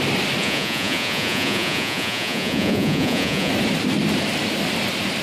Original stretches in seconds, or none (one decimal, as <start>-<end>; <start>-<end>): 0.0-0.4; 3.5-5.2